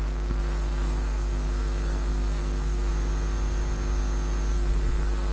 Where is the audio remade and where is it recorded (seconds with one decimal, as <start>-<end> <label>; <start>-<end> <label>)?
0.0-2.9 remade; 2.9-4.5 recorded; 4.5-5.3 remade